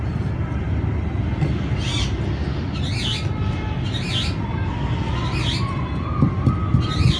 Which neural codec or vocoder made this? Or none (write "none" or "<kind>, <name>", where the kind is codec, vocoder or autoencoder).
none